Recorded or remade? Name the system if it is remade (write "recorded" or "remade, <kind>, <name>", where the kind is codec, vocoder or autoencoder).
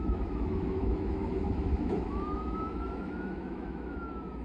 remade, autoencoder, DAC-VAE